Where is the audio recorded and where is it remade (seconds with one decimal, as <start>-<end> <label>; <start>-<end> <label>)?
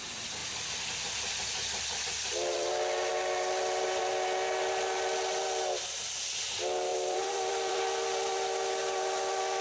0.0-0.4 recorded; 0.4-2.7 remade; 2.7-6.9 recorded; 6.9-7.8 remade; 7.8-9.6 recorded